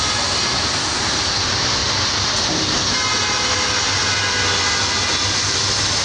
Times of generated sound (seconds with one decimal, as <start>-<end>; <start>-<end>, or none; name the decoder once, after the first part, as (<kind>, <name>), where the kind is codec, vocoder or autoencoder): 1.8-2.5 (vocoder, BigVGAN v2)